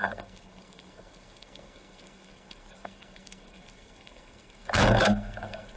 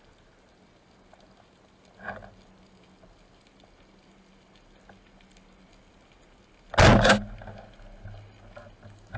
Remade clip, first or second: first